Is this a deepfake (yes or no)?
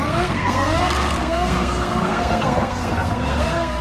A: yes